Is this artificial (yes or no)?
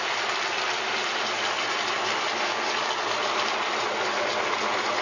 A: no